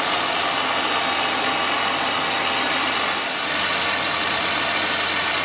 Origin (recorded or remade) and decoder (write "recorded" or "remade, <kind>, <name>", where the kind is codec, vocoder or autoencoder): recorded